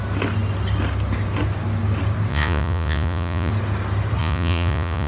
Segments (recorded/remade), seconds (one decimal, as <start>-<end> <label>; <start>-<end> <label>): 0.0-2.3 recorded; 2.3-3.5 remade; 3.5-4.2 recorded; 4.2-5.1 remade